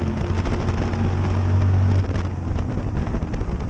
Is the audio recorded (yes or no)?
yes